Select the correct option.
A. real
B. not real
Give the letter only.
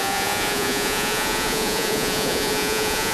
B